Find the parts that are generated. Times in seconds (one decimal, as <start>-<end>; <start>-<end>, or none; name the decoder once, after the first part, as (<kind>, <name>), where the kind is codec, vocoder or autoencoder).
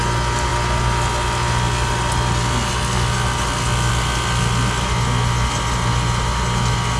none